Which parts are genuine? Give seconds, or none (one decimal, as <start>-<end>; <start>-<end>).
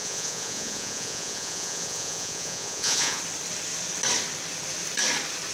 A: 3.2-5.5